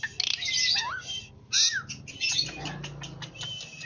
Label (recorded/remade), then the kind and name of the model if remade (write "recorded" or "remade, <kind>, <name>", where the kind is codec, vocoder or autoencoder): recorded